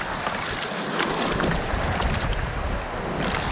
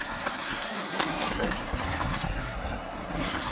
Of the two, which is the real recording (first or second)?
first